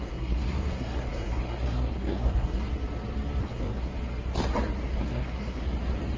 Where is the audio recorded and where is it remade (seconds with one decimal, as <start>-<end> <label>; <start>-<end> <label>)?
0.0-2.7 remade; 2.7-3.4 recorded; 3.4-3.9 remade; 3.9-5.0 recorded; 5.0-5.6 remade; 5.6-6.2 recorded